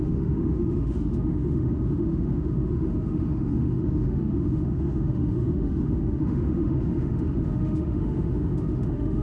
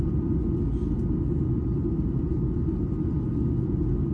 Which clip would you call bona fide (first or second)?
second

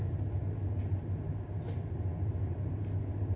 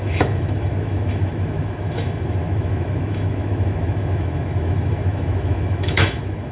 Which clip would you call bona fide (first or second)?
first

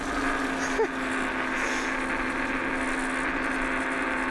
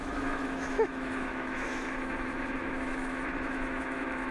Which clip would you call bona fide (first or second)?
first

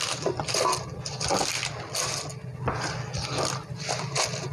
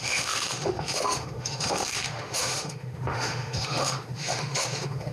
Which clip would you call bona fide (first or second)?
first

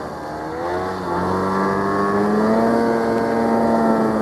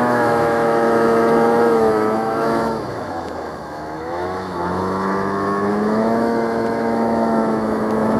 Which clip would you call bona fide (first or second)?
first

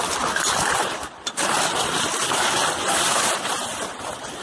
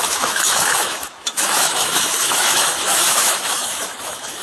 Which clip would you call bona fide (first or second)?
first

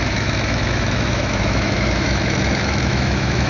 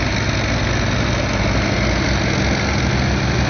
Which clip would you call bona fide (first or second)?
second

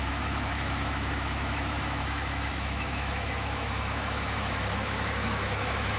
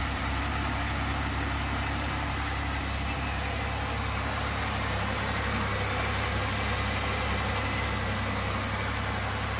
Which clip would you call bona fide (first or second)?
second